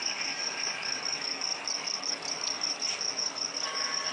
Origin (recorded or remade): remade